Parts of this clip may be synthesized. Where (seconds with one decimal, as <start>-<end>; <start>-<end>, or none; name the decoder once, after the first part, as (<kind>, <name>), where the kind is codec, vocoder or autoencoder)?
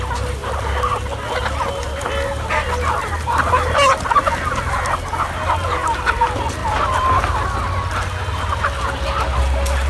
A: none